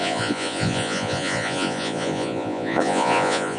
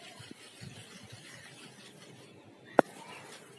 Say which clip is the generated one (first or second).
first